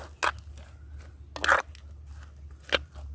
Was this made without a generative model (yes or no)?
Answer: yes